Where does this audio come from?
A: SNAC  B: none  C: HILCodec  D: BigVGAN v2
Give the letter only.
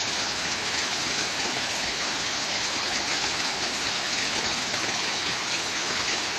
C